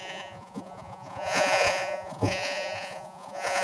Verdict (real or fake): fake